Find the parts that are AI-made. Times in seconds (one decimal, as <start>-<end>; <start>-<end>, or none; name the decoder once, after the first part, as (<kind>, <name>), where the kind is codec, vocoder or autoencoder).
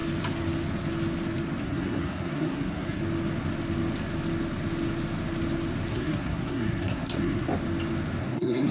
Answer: 1.6-3.0 (codec, SNAC); 5.9-7.5; 8.2-8.7